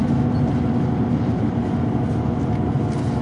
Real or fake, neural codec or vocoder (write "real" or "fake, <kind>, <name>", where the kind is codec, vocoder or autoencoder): real